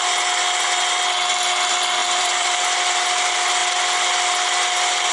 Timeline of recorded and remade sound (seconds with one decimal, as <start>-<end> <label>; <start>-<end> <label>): 0.0-2.0 recorded; 2.0-2.6 remade; 2.6-5.1 recorded